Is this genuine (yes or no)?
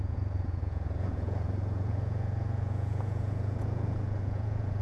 no